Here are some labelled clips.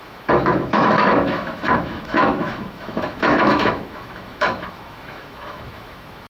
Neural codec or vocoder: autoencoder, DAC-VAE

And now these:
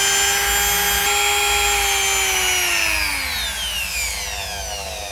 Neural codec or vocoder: none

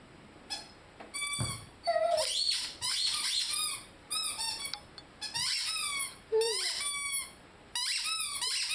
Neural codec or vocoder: none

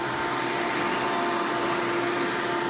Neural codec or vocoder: none